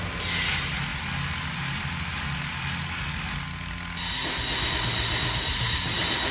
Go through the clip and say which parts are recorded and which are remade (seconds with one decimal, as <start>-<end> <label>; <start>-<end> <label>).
0.0-6.3 recorded